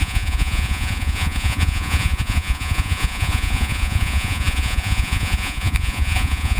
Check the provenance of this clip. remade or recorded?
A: remade